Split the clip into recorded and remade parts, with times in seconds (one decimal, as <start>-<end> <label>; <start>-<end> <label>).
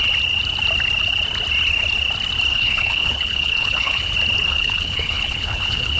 0.0-2.5 recorded; 2.5-4.1 remade; 4.1-4.5 recorded; 4.5-6.0 remade